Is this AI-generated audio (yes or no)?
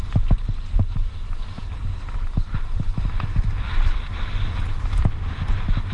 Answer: no